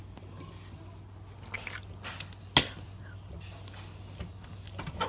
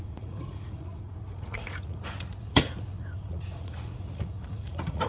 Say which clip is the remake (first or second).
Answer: second